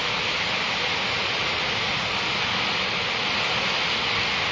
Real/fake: real